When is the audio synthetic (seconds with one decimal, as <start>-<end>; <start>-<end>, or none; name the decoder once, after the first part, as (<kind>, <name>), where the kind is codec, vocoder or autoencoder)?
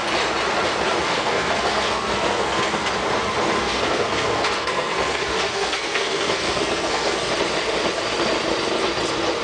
1.0-2.9 (codec, SNAC); 3.6-7.2